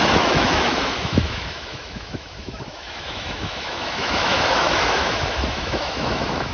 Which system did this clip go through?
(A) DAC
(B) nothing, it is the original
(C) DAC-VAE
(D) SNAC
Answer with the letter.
C